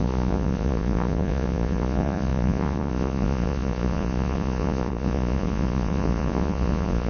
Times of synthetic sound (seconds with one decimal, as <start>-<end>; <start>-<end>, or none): 0.0-7.1